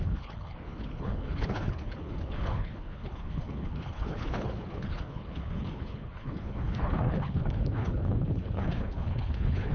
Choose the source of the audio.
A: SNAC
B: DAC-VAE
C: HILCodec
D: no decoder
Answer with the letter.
C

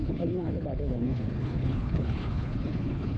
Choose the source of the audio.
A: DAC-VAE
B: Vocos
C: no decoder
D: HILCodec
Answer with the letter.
D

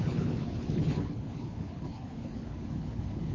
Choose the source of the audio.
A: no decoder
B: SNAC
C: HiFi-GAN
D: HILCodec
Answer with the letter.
D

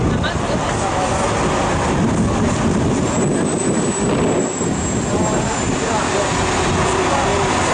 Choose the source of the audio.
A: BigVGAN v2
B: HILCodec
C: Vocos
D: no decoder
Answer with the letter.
D